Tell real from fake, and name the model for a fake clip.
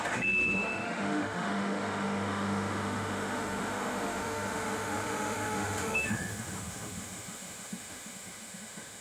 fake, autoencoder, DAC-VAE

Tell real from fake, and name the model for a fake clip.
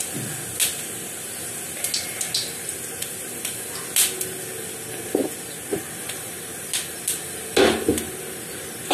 real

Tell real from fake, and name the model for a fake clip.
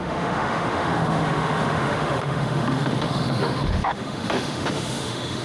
fake, autoencoder, DAC-VAE